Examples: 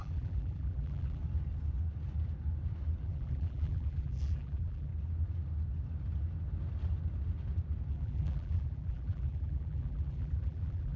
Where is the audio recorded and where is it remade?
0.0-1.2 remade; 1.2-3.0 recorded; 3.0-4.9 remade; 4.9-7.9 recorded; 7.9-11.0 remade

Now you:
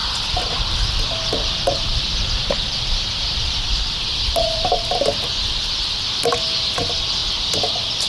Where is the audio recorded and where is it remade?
0.0-4.9 remade; 4.9-8.1 recorded

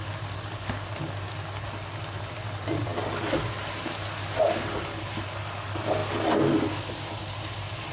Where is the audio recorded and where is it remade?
0.0-7.9 recorded

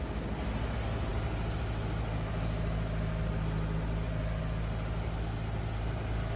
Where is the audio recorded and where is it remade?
0.0-6.4 recorded

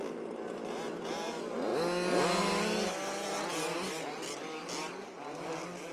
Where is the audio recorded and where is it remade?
0.0-5.9 recorded

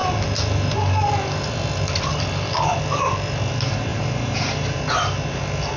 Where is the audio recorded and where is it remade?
0.0-3.9 recorded; 3.9-4.8 remade; 4.8-5.8 recorded

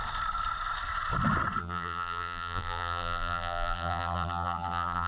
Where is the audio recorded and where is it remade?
0.0-1.6 recorded; 1.6-5.1 remade